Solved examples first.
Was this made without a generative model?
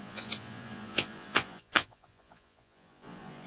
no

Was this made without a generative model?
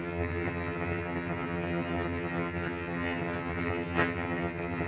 no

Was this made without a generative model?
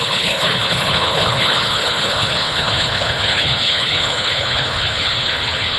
no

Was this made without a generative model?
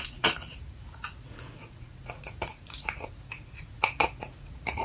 no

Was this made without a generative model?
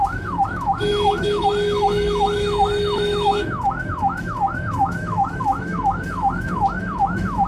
no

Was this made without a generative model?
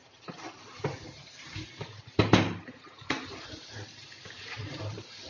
no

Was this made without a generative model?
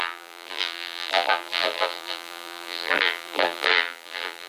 no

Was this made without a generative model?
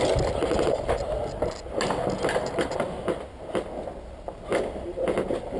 yes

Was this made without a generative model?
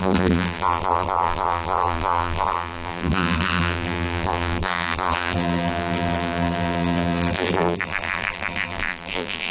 no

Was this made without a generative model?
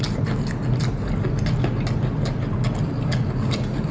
yes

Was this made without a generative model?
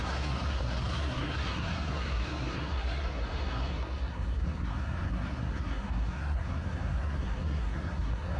no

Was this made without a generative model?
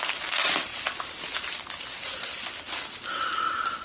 yes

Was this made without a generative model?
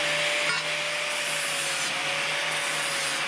yes